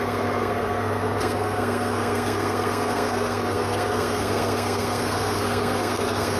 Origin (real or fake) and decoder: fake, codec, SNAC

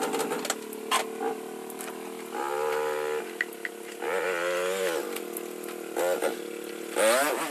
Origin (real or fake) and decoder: real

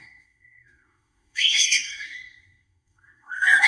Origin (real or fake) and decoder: fake, codec, SNAC